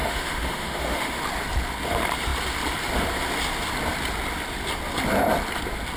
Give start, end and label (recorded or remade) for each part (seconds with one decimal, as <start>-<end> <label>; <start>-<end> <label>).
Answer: 0.0-1.2 remade; 1.2-6.0 recorded

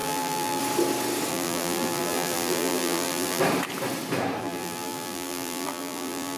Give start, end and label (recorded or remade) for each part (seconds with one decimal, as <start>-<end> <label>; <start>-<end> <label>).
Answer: 0.0-0.6 remade; 0.6-1.3 recorded; 1.3-3.4 remade; 3.4-4.4 recorded; 4.4-6.4 remade

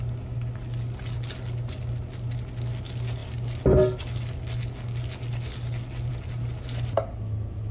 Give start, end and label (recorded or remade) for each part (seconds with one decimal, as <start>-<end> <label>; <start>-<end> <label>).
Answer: 0.0-7.7 recorded

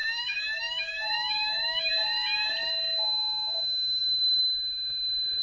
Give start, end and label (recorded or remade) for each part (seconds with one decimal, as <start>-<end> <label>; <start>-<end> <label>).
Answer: 0.0-1.9 remade; 1.9-4.4 recorded; 4.4-5.4 remade